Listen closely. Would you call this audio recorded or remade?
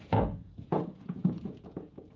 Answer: remade